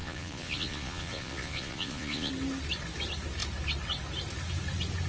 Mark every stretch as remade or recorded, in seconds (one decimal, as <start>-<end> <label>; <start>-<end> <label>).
0.0-2.3 remade; 2.3-5.1 recorded